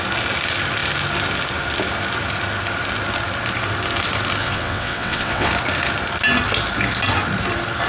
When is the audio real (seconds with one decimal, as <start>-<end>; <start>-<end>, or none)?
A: 0.0-4.4; 5.5-7.9